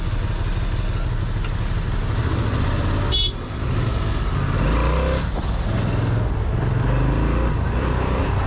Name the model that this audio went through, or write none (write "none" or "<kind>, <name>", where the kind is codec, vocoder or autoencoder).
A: none